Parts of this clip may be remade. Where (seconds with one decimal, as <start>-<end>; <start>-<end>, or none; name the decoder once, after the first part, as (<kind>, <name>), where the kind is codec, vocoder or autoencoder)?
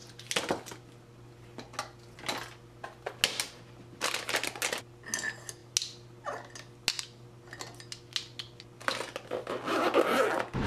none